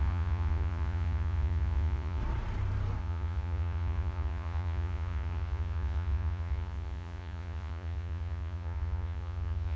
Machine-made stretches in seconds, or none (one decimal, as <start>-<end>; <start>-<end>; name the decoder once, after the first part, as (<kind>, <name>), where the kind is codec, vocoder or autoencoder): 0.0-2.2 (vocoder, Vocos); 3.0-9.8